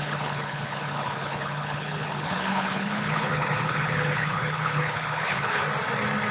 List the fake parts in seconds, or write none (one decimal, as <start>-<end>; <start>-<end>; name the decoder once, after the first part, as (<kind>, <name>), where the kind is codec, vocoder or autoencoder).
0.0-5.6 (codec, HILCodec)